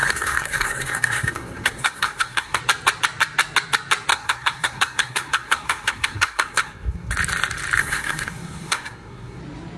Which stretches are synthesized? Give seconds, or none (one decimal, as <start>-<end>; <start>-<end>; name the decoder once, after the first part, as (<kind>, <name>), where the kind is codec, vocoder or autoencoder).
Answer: 0.0-2.6 (codec, SNAC); 4.1-7.1; 7.8-9.4